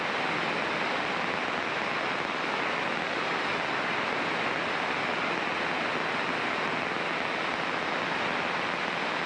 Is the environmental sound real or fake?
real